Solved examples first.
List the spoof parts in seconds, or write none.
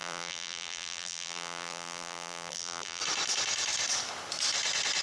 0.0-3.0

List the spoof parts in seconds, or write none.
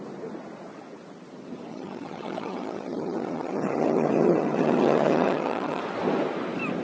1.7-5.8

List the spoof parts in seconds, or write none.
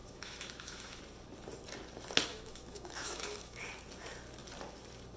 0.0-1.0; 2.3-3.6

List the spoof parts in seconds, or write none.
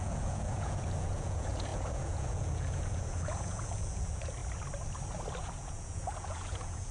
0.0-4.4; 5.4-6.9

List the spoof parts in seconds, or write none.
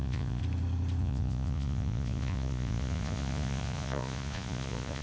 0.0-0.4; 1.0-5.0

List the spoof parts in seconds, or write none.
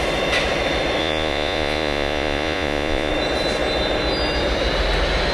1.0-3.1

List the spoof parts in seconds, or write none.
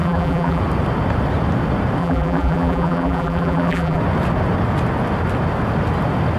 0.0-0.6; 2.0-4.0